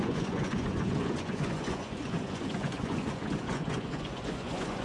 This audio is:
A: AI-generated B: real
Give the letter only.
A